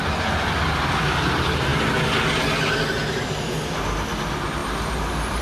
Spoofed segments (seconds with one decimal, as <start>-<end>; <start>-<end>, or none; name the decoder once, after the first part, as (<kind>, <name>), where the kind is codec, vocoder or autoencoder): none